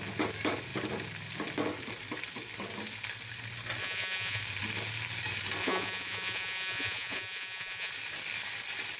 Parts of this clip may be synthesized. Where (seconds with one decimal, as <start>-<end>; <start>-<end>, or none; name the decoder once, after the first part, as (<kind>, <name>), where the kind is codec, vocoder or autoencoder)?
3.8-4.4 (vocoder, Vocos); 5.6-7.9